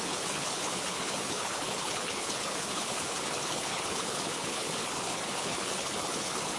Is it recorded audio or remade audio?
remade